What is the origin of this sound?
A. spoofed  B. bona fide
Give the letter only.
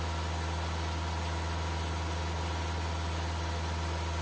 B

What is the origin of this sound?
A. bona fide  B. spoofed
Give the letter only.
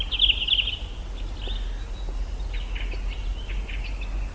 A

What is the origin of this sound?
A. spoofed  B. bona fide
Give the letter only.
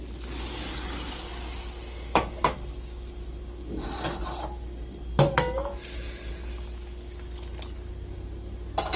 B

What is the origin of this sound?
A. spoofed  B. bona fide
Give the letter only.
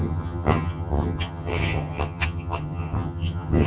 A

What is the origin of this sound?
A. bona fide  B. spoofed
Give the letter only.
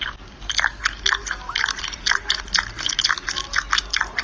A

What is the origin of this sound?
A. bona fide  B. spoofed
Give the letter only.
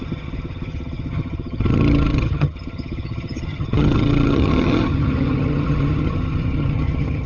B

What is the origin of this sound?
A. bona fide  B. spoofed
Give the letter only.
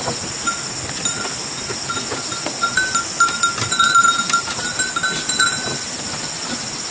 A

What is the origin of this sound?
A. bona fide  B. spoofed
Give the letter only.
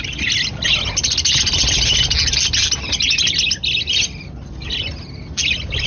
A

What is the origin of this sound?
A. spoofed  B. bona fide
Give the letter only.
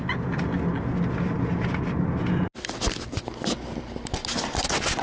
B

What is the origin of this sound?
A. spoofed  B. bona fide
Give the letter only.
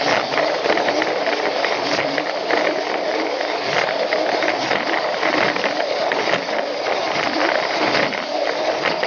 B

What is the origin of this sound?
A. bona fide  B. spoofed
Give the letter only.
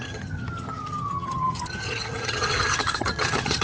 B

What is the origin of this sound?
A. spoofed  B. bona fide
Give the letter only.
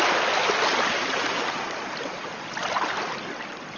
B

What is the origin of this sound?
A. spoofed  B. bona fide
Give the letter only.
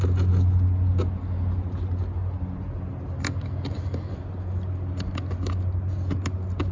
B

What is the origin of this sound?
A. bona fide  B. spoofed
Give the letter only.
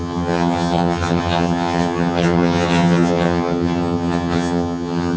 B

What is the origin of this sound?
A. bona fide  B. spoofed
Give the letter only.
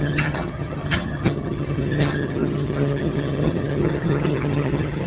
B